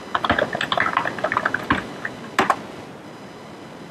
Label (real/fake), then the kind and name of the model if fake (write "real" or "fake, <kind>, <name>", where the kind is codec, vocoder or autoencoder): real